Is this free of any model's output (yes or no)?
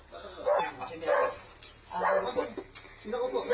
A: yes